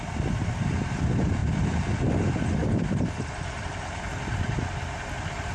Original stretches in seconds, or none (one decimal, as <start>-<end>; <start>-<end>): 0.0-1.4; 1.9-2.6; 3.6-5.5